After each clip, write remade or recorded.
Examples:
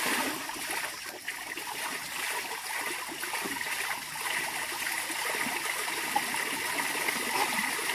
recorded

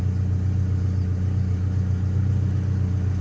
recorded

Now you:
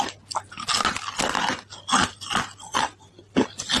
recorded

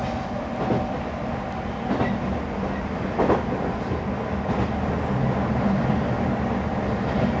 recorded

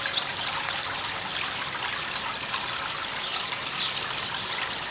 recorded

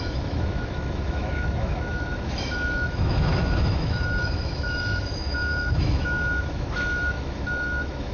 remade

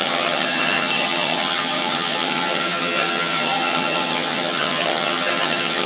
remade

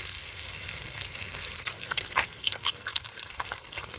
remade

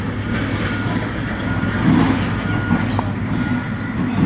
recorded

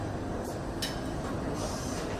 recorded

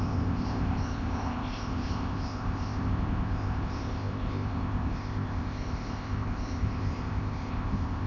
remade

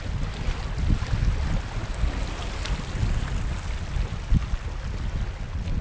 recorded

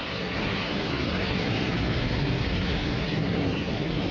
remade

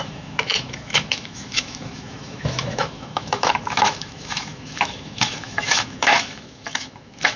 remade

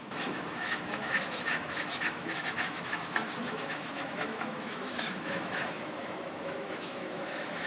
remade